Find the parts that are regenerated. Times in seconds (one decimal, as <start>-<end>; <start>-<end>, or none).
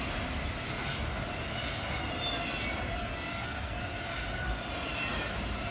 3.0-3.8